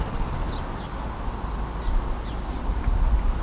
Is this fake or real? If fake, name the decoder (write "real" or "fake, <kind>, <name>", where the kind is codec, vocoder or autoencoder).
real